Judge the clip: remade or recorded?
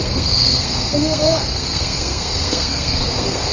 remade